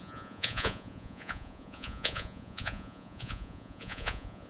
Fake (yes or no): yes